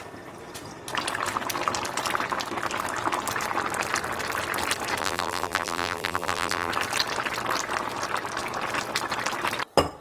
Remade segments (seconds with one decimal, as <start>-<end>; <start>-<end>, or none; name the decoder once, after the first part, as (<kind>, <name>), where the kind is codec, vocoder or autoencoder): 5.0-6.7 (vocoder, BigVGAN v2)